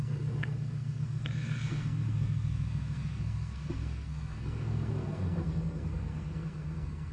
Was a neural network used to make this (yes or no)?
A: yes